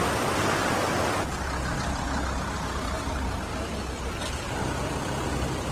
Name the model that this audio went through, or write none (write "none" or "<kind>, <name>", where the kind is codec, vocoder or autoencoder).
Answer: none